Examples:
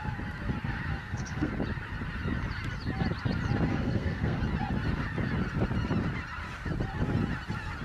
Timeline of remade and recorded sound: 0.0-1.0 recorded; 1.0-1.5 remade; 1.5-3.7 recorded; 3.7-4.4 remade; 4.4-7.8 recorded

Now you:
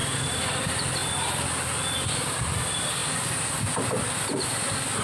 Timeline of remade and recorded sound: 0.0-0.6 remade; 0.6-5.0 recorded

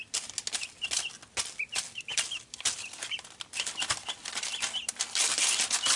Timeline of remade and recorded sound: 0.0-2.1 recorded; 2.1-3.7 remade; 3.7-6.0 recorded

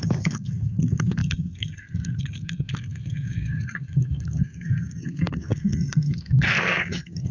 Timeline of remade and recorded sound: 0.0-7.3 remade

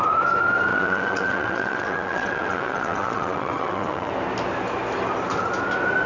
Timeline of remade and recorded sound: 0.0-0.7 recorded; 0.7-4.1 remade; 4.1-6.1 recorded